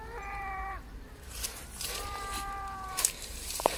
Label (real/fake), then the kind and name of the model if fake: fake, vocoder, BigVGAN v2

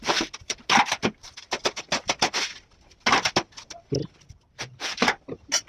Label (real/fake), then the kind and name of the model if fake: real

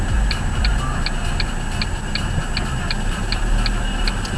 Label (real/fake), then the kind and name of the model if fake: real